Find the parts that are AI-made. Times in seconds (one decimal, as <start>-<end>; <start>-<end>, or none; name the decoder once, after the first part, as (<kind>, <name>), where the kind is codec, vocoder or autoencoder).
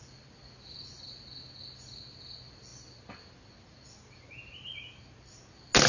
none